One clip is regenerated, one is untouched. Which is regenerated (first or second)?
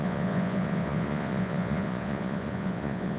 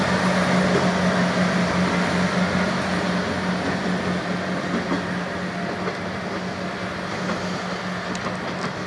first